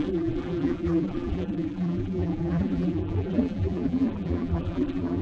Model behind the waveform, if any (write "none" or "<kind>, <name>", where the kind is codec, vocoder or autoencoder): vocoder, BigVGAN v2